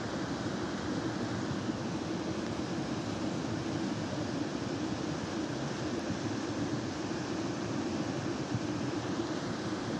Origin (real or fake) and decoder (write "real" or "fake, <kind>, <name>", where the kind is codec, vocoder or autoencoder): real